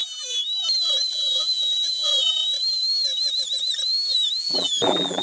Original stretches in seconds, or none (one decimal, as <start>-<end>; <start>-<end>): 0.0-1.1; 2.1-4.4